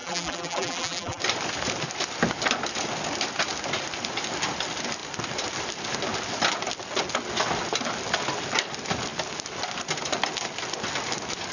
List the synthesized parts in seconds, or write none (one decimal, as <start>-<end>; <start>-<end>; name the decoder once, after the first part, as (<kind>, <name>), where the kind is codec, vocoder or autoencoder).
0.0-1.2 (vocoder, BigVGAN v2)